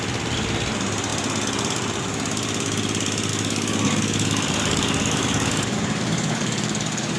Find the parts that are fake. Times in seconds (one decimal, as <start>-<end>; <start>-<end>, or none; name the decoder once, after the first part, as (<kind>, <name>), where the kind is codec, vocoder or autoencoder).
3.3-7.2 (codec, DAC)